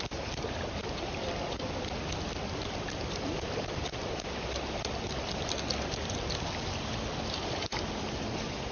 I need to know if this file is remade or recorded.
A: recorded